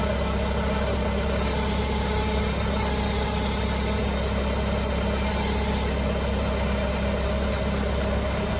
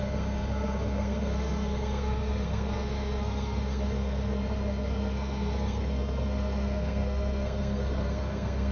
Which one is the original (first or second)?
first